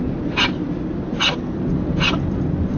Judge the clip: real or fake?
real